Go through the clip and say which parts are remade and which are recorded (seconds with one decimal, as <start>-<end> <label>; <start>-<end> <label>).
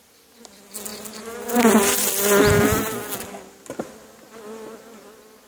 0.0-5.5 recorded